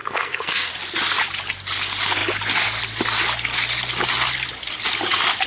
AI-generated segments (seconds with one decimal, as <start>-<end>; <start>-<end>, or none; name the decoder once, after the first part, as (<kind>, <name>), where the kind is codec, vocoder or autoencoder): 0.0-0.7 (codec, SNAC)